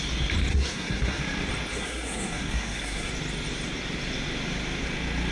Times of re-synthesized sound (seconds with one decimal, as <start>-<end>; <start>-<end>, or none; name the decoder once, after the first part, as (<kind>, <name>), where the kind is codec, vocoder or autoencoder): 0.5-1.2 (codec, SNAC); 1.7-3.1